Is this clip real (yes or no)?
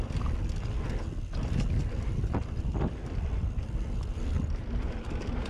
yes